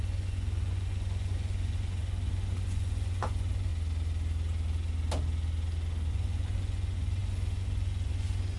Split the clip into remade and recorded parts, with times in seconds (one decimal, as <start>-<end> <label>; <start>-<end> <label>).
0.0-3.7 remade; 3.7-6.1 recorded; 6.1-8.6 remade